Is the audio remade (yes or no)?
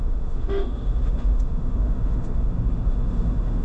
yes